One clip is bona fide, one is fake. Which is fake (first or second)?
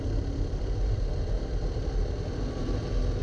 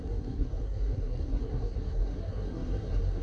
second